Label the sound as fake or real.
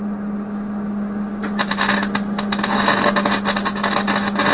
real